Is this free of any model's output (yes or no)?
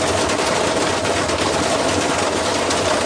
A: yes